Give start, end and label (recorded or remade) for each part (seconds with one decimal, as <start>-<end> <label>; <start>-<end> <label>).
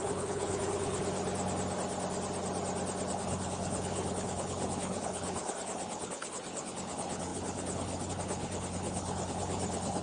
0.0-1.0 remade; 1.0-3.1 recorded; 3.1-10.0 remade